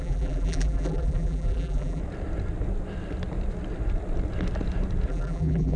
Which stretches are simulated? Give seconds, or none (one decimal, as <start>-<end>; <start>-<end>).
0.0-2.0; 5.1-5.8